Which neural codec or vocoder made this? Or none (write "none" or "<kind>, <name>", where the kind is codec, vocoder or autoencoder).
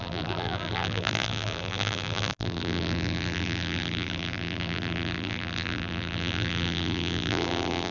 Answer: vocoder, BigVGAN v2